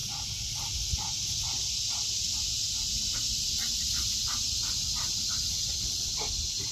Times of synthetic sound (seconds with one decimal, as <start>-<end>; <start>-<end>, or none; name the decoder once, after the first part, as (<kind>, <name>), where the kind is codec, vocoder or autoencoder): 0.0-0.8 (vocoder, BigVGAN v2); 3.2-6.1